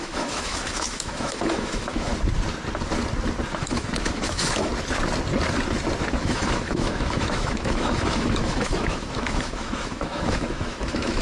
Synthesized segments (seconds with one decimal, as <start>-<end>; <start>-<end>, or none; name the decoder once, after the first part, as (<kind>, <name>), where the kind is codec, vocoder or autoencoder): 0.0-2.1 (autoencoder, DAC-VAE); 3.5-4.7; 6.2-11.2